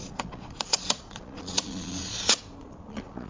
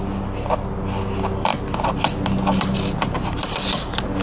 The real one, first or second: second